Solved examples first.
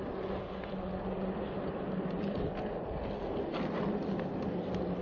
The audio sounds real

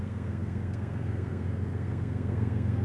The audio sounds fake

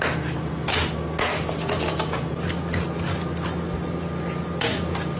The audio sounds real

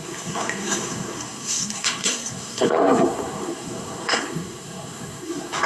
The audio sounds fake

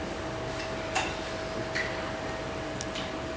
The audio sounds real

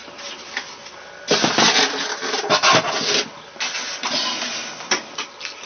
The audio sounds real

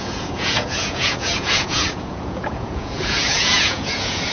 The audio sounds fake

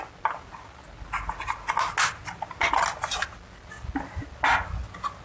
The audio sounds real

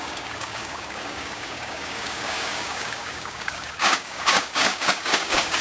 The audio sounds fake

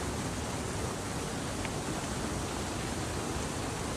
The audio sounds real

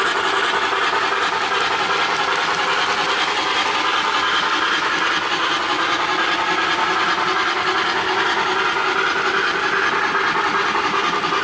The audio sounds real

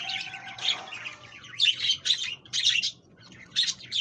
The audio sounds fake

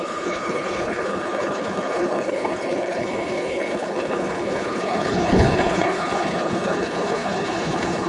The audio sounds fake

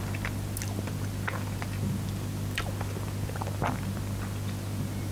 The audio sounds real